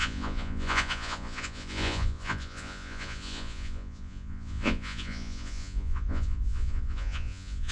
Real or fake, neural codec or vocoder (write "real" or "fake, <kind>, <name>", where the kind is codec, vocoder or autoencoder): fake, vocoder, Vocos